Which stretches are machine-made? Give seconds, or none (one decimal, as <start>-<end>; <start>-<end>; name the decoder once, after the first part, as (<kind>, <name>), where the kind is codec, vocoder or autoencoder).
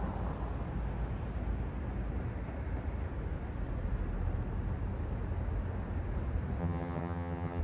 6.6-7.6 (vocoder, HiFi-GAN)